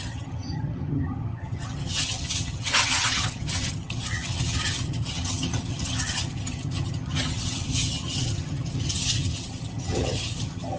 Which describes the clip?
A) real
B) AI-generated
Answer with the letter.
B